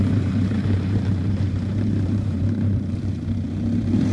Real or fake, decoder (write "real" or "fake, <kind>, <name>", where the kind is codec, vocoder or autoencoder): fake, vocoder, BigVGAN v2